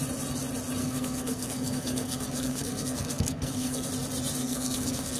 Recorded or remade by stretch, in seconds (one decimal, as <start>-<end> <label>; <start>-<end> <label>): 0.0-0.8 recorded; 0.8-3.9 remade; 3.9-4.4 recorded; 4.4-5.2 remade